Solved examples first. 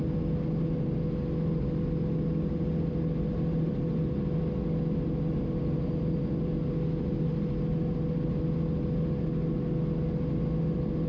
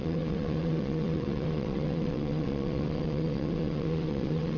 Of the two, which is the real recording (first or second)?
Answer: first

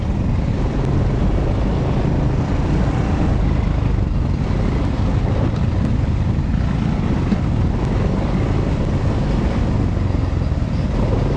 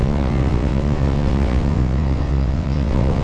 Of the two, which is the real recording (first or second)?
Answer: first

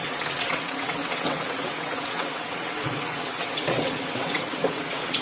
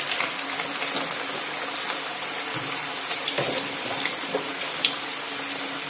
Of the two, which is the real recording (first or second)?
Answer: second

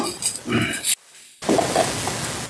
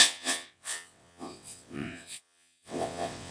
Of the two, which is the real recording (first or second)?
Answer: first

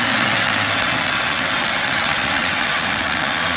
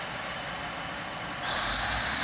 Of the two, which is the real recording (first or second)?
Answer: second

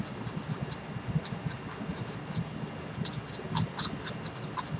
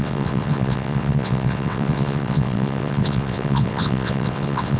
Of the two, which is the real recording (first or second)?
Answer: first